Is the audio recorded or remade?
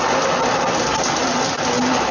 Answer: recorded